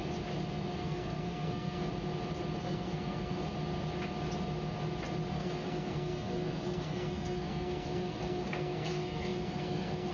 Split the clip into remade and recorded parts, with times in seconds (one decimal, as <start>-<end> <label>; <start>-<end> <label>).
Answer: 0.0-0.8 recorded; 0.8-1.9 remade; 1.9-2.6 recorded; 2.6-3.4 remade; 3.4-5.3 recorded; 5.3-10.1 remade